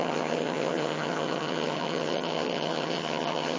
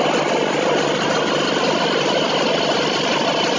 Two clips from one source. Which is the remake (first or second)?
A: first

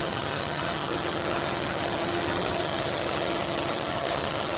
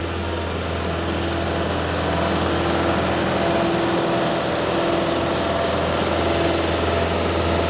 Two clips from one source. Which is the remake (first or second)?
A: first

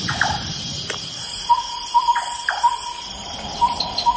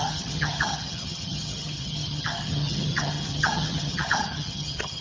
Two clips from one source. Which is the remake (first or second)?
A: second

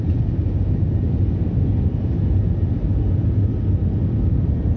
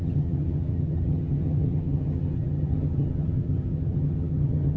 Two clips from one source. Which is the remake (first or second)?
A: second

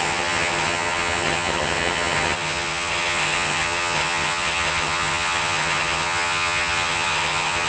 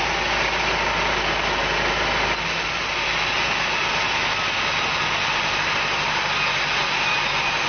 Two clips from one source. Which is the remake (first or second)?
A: first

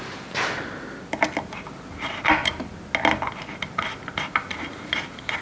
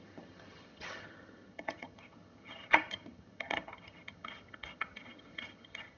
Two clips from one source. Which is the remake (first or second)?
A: second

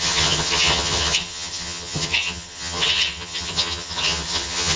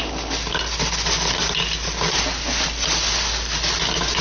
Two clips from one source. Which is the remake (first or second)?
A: first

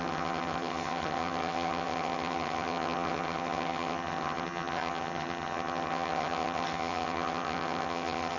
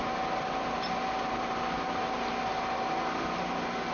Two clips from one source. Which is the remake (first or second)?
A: first